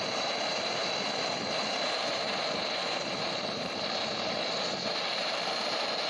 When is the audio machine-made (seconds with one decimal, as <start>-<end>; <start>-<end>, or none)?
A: 0.0-6.1